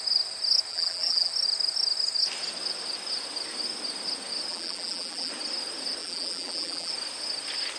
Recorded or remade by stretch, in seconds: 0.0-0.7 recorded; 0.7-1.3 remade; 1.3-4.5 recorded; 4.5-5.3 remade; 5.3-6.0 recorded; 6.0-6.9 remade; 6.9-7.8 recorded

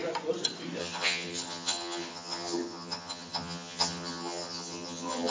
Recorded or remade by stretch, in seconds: 0.0-0.8 recorded; 0.8-5.3 remade

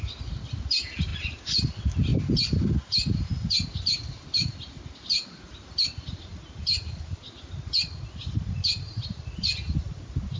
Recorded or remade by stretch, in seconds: 0.0-1.1 recorded; 1.1-1.6 remade; 1.6-10.4 recorded

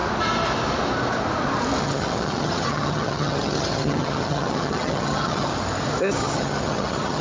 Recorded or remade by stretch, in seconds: 0.0-1.8 recorded; 1.8-5.5 remade; 5.5-6.1 recorded; 6.1-7.2 remade

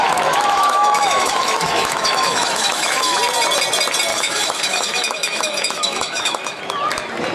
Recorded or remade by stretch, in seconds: 0.0-3.2 remade; 3.2-4.1 recorded; 4.1-6.6 remade; 6.6-7.3 recorded

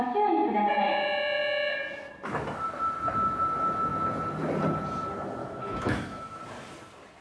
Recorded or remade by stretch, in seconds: 0.0-5.4 recorded; 5.4-6.4 remade; 6.4-7.2 recorded

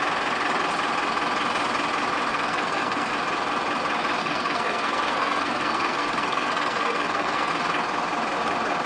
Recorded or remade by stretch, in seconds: 0.0-2.3 recorded; 2.3-3.1 remade; 3.1-4.2 recorded; 4.2-7.5 remade; 7.5-8.9 recorded

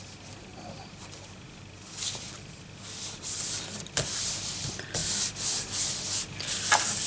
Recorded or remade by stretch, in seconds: 0.0-0.5 recorded; 0.5-4.4 remade; 4.4-7.1 recorded